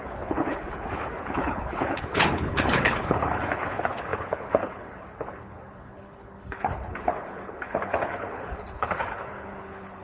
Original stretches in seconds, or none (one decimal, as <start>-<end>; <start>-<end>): none